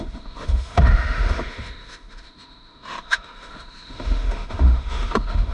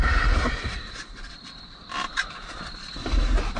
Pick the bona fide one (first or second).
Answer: second